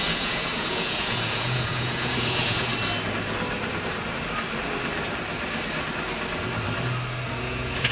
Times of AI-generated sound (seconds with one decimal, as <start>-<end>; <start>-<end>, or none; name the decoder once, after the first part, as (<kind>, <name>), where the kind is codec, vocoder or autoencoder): 0.0-2.7 (vocoder, Vocos); 7.4-7.9